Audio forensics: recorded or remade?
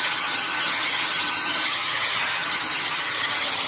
remade